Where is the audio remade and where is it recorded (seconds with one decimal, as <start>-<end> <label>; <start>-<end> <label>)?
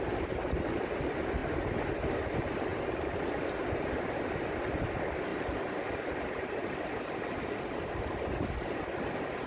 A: 0.0-2.7 recorded; 2.7-4.2 remade; 4.2-5.3 recorded; 5.3-6.9 remade; 6.9-9.5 recorded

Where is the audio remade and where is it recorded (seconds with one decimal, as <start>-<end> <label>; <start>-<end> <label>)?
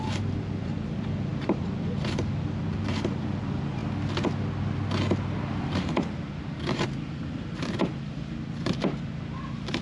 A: 0.0-3.8 remade; 3.8-5.6 recorded; 5.6-9.8 remade